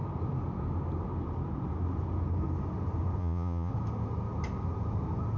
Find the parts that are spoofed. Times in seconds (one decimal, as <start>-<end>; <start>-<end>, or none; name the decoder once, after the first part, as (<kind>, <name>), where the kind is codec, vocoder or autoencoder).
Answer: 3.2-3.7 (vocoder, Vocos)